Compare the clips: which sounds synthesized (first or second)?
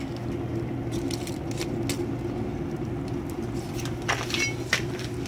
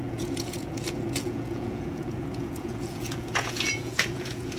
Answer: second